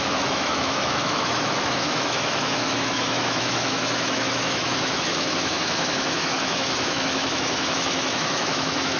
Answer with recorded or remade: remade